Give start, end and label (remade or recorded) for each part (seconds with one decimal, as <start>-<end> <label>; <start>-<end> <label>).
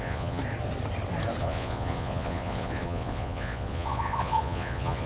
0.0-0.4 remade; 0.4-1.4 recorded; 1.4-5.1 remade